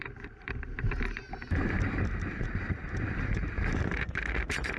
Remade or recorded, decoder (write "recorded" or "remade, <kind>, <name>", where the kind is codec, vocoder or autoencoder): remade, vocoder, BigVGAN v2